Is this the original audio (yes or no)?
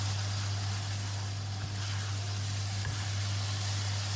yes